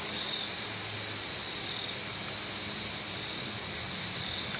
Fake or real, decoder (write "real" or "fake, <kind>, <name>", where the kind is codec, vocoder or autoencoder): real